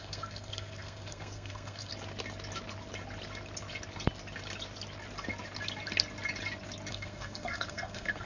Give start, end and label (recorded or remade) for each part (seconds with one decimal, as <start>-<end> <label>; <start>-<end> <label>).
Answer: 0.0-1.9 remade; 1.9-6.9 recorded; 6.9-8.3 remade